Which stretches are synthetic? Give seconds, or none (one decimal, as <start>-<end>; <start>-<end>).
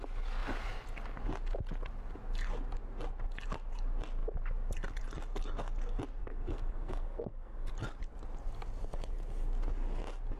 6.2-7.7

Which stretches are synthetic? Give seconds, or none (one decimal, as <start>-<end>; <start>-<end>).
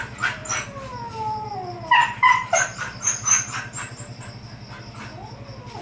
2.0-4.3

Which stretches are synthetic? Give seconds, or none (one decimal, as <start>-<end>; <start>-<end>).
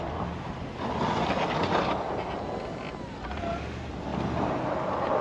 none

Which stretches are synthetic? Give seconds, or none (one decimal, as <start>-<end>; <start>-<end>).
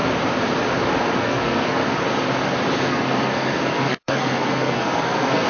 1.2-1.8; 2.9-5.5